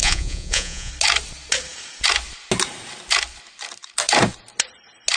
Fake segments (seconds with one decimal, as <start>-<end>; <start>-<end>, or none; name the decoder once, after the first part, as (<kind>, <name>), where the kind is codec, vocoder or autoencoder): 0.0-0.9 (vocoder, Vocos)